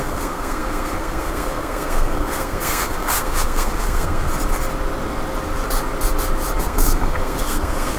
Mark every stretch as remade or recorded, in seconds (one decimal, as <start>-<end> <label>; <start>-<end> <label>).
0.0-4.3 remade; 4.3-6.6 recorded; 6.6-8.0 remade